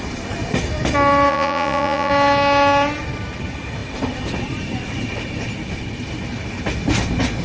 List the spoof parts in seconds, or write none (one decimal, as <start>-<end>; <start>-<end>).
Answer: 1.3-2.1